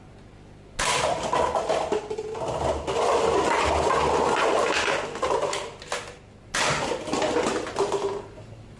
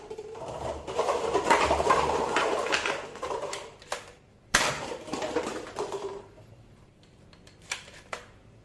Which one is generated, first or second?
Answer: second